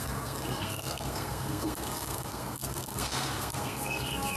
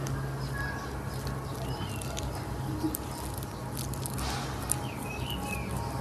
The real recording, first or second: second